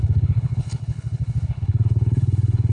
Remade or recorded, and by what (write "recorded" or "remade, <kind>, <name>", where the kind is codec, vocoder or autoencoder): remade, codec, HILCodec